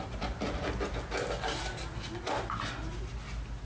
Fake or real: real